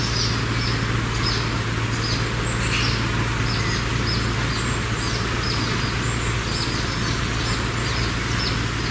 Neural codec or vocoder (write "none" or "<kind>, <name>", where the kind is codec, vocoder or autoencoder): none